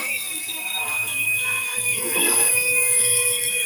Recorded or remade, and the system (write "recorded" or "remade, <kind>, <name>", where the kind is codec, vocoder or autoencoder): remade, codec, SNAC